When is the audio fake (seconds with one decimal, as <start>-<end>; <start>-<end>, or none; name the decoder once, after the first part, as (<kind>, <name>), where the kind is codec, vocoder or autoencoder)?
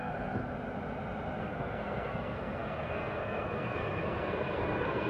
0.0-0.4 (codec, SNAC); 1.4-5.1